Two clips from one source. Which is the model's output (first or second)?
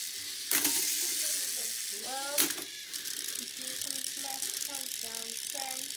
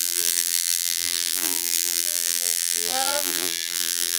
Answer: second